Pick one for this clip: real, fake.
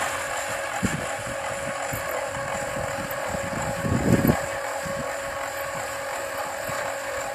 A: real